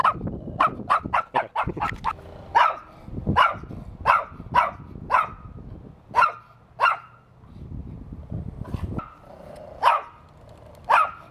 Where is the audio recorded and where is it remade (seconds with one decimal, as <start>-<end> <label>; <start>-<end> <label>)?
0.0-7.8 recorded; 7.8-8.4 remade; 8.4-11.3 recorded